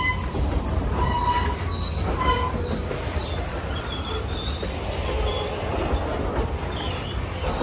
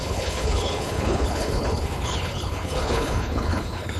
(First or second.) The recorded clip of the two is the first